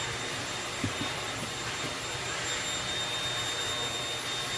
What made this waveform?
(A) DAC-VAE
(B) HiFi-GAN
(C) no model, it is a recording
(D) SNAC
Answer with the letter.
C